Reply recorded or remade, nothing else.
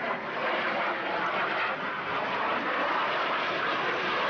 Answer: recorded